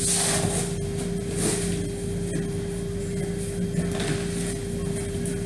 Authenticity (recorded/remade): recorded